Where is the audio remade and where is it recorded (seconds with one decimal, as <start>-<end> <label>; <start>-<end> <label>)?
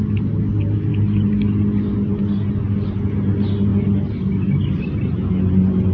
0.0-5.9 recorded